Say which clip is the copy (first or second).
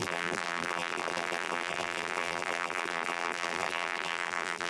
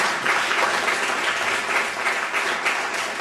first